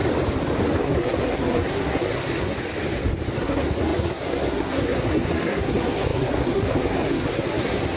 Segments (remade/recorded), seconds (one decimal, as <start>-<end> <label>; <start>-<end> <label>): 0.0-0.8 recorded; 0.8-2.6 remade; 2.6-3.4 recorded; 3.4-8.0 remade